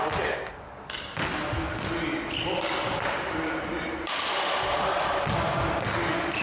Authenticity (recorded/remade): recorded